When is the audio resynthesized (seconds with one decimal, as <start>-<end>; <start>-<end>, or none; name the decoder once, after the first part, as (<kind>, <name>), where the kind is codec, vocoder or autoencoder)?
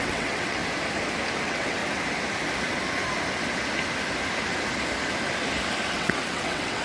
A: 0.0-0.6 (vocoder, WaveNeXt); 1.4-1.8; 5.9-6.8